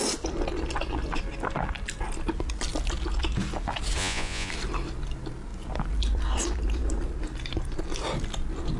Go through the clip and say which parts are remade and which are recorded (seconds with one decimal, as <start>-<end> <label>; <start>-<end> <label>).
0.0-4.0 recorded; 4.0-4.5 remade; 4.5-8.8 recorded